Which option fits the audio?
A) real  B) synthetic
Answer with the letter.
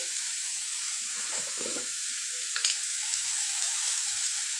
B